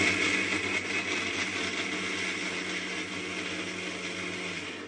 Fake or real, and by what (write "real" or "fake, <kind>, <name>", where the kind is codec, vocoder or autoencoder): real